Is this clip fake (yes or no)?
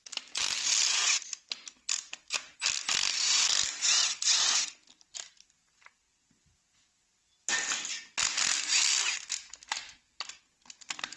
no